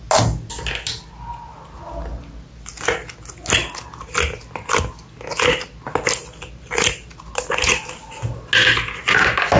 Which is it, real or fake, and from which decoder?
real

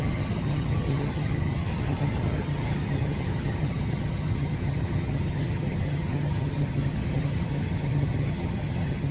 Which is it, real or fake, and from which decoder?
fake, vocoder, HiFi-GAN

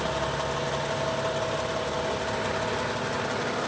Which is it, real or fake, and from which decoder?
real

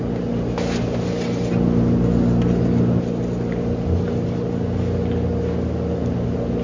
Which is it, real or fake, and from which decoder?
real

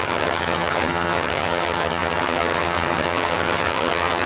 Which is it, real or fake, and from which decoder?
fake, vocoder, HiFi-GAN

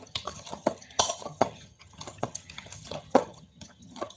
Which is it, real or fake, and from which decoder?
fake, vocoder, HiFi-GAN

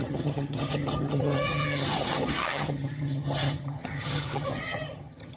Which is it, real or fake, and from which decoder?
fake, vocoder, HiFi-GAN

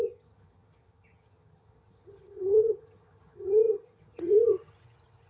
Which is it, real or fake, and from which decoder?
fake, vocoder, HiFi-GAN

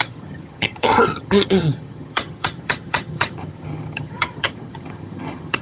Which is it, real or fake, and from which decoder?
fake, vocoder, HiFi-GAN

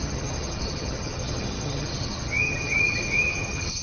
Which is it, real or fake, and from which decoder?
fake, vocoder, HiFi-GAN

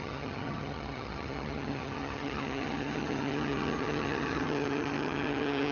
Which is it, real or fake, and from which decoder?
fake, vocoder, HiFi-GAN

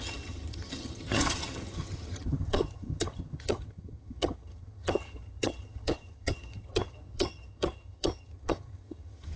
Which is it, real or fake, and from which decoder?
fake, vocoder, HiFi-GAN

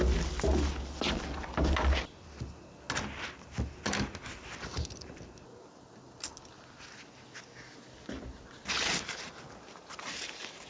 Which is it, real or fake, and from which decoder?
real